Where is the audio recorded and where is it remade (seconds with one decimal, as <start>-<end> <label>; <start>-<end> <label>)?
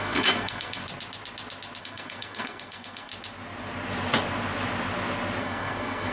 0.0-0.8 remade; 0.8-1.8 recorded; 1.8-3.1 remade; 3.1-5.4 recorded; 5.4-6.1 remade